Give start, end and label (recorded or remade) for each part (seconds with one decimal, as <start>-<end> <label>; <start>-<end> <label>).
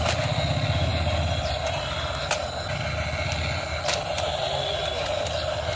0.0-5.8 recorded